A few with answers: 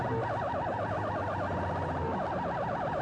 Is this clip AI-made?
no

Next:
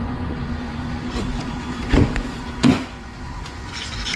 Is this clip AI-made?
yes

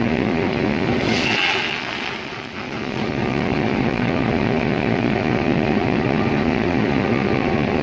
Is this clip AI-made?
yes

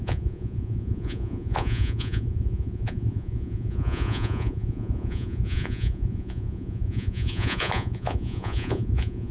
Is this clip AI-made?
yes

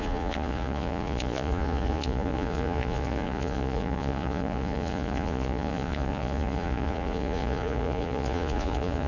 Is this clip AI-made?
yes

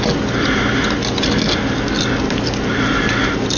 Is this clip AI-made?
no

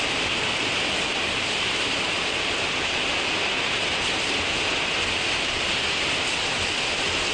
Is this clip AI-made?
no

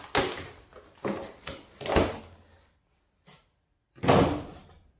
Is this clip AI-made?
no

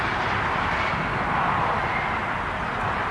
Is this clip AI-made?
no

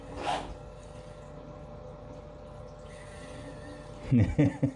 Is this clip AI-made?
no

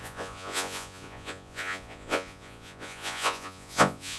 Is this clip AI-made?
yes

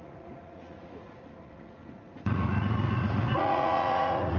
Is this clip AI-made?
yes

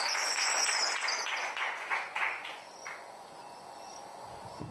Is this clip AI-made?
yes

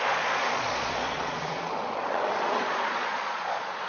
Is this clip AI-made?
yes